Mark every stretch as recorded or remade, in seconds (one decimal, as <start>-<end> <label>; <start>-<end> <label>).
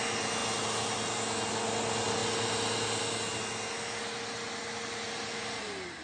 0.0-6.0 recorded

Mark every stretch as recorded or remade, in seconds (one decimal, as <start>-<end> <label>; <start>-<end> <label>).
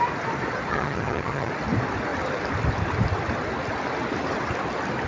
0.0-0.7 recorded; 0.7-1.5 remade; 1.5-5.1 recorded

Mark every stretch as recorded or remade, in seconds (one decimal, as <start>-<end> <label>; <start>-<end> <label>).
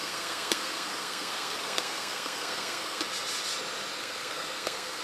0.0-3.0 remade; 3.0-4.0 recorded; 4.0-5.0 remade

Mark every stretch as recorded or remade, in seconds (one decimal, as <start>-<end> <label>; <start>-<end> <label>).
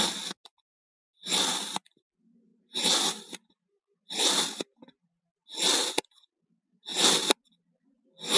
0.0-8.4 recorded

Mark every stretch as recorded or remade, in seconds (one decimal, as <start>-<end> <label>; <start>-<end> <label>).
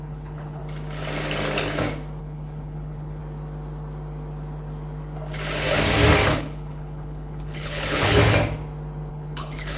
0.0-0.6 remade; 0.6-2.2 recorded; 2.2-3.2 remade; 3.2-6.3 recorded; 6.3-8.2 remade; 8.2-9.1 recorded; 9.1-9.8 remade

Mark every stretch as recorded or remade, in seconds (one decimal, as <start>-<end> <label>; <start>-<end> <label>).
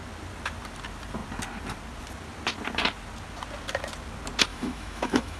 0.0-4.5 recorded; 4.5-5.4 remade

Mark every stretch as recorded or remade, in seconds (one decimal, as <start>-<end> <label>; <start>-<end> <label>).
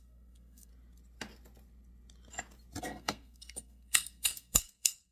0.0-0.7 remade; 0.7-2.8 recorded; 2.8-5.1 remade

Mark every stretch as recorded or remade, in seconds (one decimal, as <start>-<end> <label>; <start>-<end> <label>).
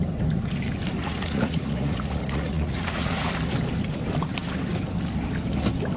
0.0-1.0 recorded; 1.0-3.3 remade; 3.3-6.0 recorded